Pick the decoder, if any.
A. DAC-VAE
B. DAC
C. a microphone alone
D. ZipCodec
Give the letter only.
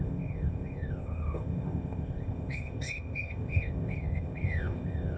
D